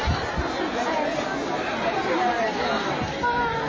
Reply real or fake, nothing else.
real